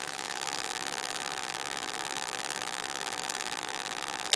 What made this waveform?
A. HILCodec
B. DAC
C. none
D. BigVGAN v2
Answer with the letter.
D